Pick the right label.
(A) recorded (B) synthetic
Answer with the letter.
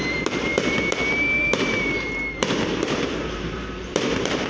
B